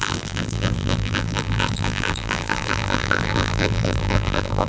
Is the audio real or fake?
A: fake